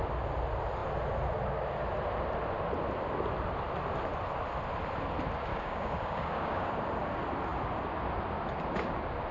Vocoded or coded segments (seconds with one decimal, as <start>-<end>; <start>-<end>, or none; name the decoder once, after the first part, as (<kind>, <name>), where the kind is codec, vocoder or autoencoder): 5.5-6.7 (codec, DAC)